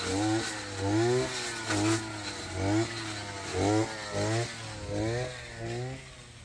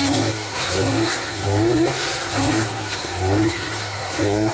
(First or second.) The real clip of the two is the first